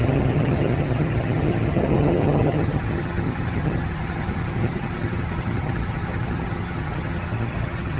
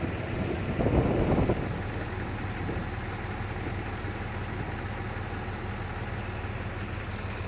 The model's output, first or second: first